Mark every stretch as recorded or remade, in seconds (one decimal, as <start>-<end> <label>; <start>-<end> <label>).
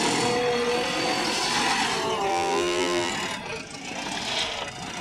0.0-2.3 recorded; 2.3-3.1 remade; 3.1-5.0 recorded